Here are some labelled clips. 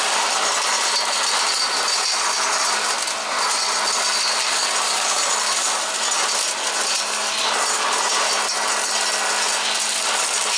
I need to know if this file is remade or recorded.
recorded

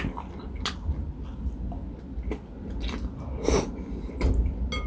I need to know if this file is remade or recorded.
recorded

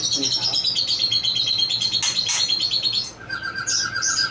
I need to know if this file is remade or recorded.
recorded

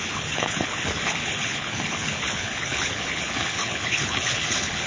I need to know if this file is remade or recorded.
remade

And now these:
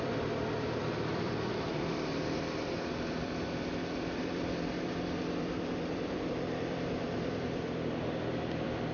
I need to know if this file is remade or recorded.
remade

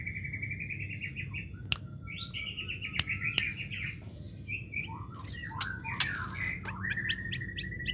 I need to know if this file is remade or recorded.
recorded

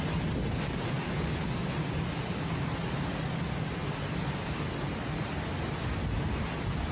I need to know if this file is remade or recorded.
recorded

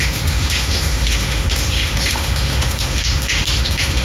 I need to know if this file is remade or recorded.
remade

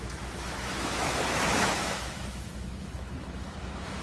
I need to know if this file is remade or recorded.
remade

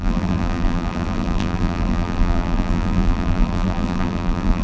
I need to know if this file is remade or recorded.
remade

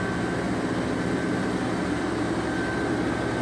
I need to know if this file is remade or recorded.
recorded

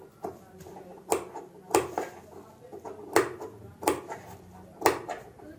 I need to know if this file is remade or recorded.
recorded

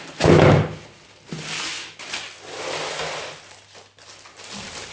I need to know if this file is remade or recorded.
recorded